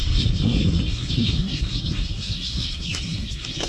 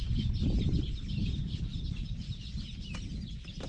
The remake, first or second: first